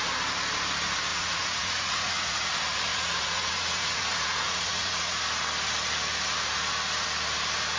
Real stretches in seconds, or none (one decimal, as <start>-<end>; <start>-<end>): 0.0-1.1; 2.5-2.9; 5.2-7.8